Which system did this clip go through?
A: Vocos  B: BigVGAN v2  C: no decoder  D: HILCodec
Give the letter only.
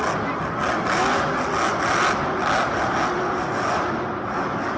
C